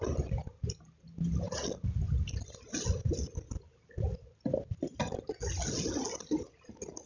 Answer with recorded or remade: recorded